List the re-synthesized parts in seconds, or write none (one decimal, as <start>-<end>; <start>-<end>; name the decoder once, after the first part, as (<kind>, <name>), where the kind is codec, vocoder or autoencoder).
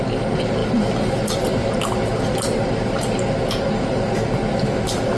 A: none